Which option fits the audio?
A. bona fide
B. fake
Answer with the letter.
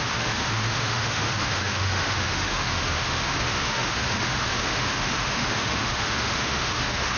B